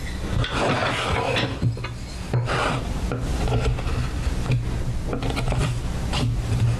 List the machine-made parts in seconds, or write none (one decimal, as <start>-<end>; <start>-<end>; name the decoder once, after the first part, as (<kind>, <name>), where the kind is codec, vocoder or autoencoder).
none